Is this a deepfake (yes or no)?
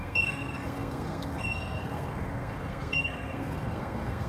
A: yes